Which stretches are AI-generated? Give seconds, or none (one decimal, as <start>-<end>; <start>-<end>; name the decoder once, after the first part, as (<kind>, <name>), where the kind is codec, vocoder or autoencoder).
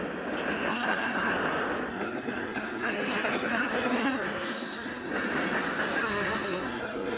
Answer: 0.7-1.3 (codec, SNAC); 1.9-5.1; 6.0-7.2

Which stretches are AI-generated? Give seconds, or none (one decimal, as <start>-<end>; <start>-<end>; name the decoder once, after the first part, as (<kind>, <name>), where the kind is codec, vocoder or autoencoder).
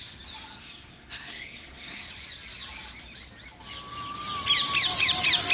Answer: 0.6-2.1 (codec, SNAC)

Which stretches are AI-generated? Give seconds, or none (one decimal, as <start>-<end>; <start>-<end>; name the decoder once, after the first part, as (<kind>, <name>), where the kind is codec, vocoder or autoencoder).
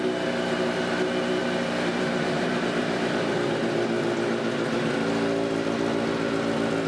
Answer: 1.4-3.7 (vocoder, BigVGAN v2)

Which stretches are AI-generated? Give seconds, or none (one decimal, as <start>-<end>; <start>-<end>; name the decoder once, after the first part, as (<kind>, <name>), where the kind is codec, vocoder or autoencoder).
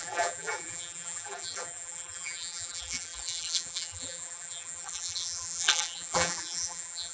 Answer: 0.0-7.1 (vocoder, BigVGAN v2)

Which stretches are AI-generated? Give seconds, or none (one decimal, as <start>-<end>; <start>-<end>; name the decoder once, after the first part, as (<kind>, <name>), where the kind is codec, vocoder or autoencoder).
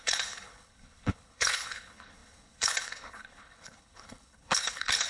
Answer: 0.0-5.1 (codec, HILCodec)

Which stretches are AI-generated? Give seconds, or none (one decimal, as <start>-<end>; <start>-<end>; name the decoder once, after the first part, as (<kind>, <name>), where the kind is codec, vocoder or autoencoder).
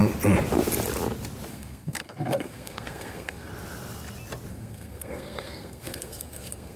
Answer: 1.5-3.5 (codec, SNAC); 4.5-6.8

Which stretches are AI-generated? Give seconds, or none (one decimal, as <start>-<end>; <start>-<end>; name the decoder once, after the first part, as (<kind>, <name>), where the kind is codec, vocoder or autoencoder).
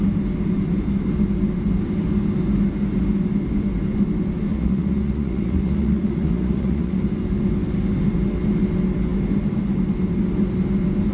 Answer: 4.5-7.0 (vocoder, Vocos)